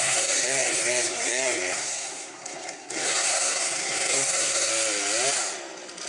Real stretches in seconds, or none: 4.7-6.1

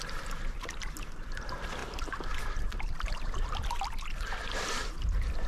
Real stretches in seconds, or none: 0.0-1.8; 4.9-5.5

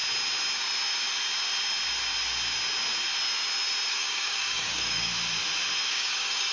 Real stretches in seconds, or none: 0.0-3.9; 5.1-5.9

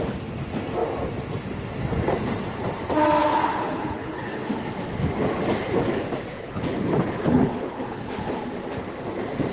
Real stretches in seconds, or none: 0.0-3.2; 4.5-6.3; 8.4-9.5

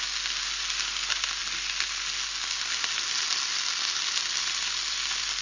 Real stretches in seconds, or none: 0.0-5.4